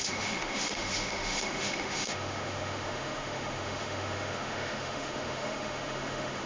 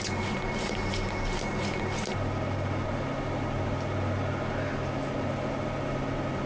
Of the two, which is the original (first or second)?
second